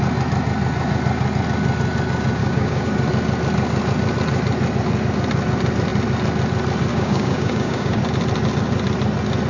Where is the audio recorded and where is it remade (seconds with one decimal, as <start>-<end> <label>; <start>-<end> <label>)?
0.0-2.4 recorded; 2.4-2.9 remade; 2.9-6.9 recorded; 6.9-8.0 remade; 8.0-9.5 recorded